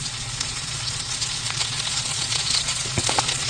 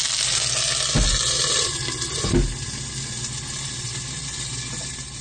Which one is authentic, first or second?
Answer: second